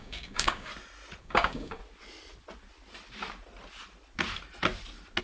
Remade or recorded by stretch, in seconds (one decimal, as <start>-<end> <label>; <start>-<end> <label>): 0.0-0.7 remade; 0.7-1.2 recorded; 1.2-1.8 remade; 1.8-5.2 recorded